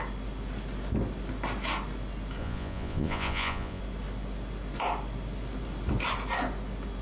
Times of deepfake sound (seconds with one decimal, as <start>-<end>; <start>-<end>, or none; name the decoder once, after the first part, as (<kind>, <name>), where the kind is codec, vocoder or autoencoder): 2.4-3.8 (vocoder, Vocos)